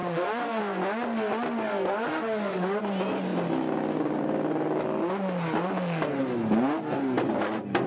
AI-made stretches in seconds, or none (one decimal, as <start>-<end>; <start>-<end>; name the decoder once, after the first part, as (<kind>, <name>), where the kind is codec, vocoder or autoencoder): 0.0-0.6 (autoencoder, DAC-VAE); 2.1-2.8